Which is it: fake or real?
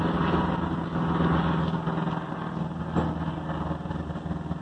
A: real